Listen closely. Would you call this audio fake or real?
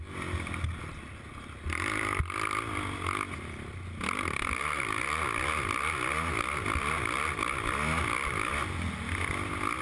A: real